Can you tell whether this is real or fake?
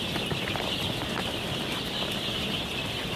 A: real